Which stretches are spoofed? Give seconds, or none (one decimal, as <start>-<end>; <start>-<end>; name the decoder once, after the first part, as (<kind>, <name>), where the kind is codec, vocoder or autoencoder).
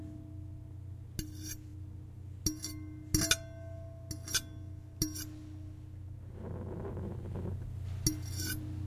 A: none